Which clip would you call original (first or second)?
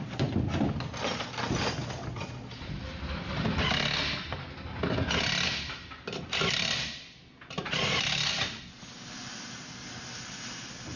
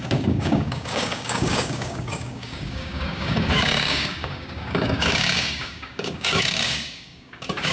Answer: first